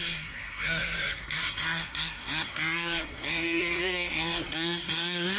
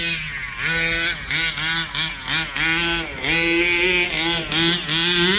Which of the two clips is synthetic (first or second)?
first